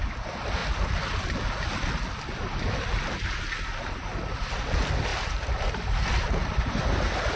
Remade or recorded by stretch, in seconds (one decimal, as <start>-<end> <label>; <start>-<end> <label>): 0.0-5.1 recorded; 5.1-7.4 remade